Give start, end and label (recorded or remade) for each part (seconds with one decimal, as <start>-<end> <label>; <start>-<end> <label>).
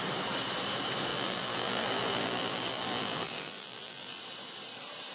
0.0-1.1 recorded; 1.1-4.2 remade; 4.2-5.1 recorded